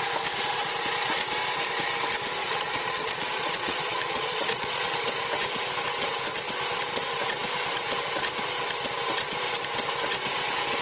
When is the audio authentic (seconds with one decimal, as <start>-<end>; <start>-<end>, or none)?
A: 0.0-2.4; 4.9-10.8